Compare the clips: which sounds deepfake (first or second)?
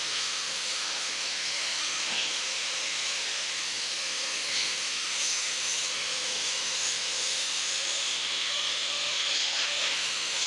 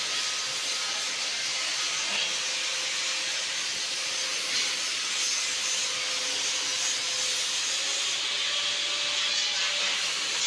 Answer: first